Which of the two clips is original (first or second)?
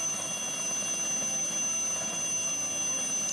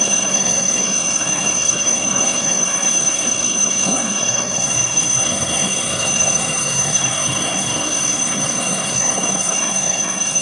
first